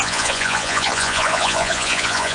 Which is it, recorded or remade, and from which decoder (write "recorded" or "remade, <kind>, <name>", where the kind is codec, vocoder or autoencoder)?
remade, vocoder, Vocos